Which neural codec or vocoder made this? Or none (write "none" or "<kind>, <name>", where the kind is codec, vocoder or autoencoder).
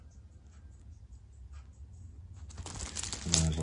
none